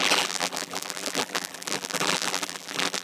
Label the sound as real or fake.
fake